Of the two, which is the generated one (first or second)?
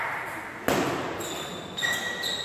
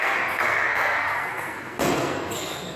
second